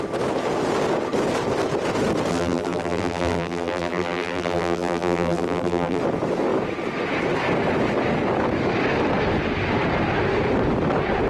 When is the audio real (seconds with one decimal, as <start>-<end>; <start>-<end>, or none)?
0.0-2.3; 6.0-11.3